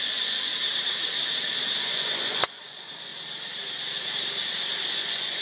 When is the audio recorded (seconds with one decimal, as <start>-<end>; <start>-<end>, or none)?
0.5-1.8; 3.1-4.9